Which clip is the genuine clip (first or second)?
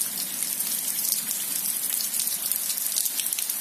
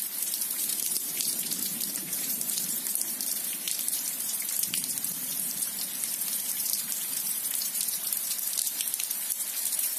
first